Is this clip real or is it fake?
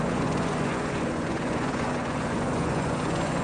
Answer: fake